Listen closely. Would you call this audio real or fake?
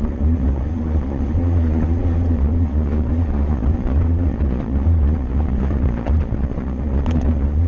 fake